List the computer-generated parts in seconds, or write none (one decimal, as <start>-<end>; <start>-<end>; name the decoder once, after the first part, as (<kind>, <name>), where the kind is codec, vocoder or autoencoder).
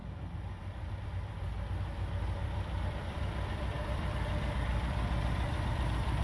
0.0-1.1 (vocoder, BigVGAN v2); 2.4-5.7